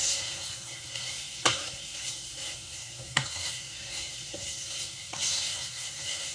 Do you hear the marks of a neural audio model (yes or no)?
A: yes